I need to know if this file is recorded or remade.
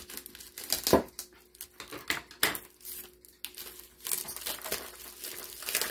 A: recorded